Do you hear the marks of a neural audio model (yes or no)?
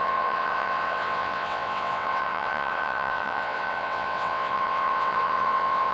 yes